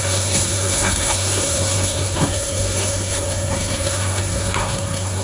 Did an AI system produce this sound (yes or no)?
yes